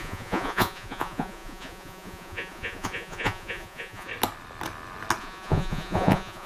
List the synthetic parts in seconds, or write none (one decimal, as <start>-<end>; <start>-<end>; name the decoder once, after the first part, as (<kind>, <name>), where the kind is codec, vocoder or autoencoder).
0.0-4.1 (vocoder, Vocos); 5.2-6.5